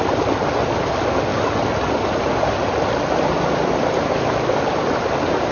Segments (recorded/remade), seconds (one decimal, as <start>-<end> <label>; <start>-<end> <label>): 0.0-5.5 recorded